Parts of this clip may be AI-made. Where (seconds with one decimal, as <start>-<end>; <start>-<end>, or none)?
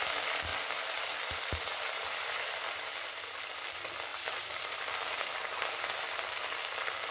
4.1-5.2